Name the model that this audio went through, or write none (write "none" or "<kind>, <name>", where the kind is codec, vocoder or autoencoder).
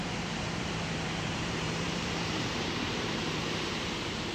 vocoder, BigVGAN v2